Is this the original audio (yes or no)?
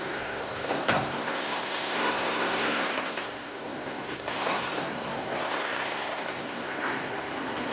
no